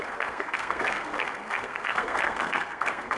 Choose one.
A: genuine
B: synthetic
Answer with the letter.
B